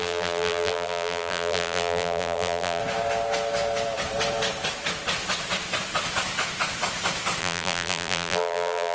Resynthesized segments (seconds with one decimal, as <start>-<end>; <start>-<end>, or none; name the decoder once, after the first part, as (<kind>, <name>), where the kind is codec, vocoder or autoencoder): 0.0-2.8 (vocoder, BigVGAN v2); 7.4-8.9